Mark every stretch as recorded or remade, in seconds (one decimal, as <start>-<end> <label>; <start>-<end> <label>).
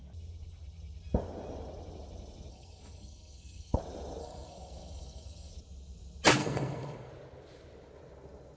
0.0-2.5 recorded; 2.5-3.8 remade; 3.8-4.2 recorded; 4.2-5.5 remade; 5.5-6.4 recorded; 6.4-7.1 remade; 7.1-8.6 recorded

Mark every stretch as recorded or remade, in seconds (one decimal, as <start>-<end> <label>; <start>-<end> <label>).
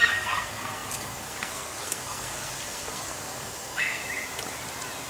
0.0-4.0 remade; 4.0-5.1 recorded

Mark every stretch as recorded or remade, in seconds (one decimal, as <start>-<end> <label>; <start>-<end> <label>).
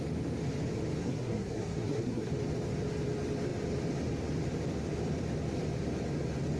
0.0-1.0 recorded; 1.0-2.3 remade; 2.3-6.6 recorded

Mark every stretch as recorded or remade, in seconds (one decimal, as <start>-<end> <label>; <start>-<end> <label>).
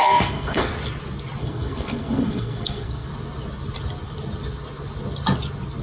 0.0-0.7 remade; 0.7-1.4 recorded; 1.4-3.1 remade; 3.1-5.8 recorded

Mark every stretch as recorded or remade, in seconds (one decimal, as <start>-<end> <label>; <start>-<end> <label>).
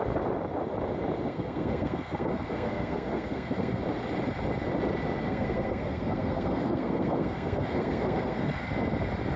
0.0-1.3 recorded; 1.3-3.8 remade; 3.8-5.2 recorded; 5.2-8.6 remade; 8.6-9.4 recorded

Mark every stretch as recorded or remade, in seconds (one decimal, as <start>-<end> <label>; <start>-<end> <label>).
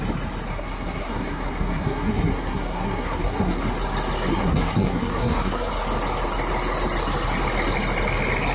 0.0-0.5 recorded; 0.5-3.6 remade; 3.6-4.3 recorded; 4.3-5.7 remade; 5.7-8.5 recorded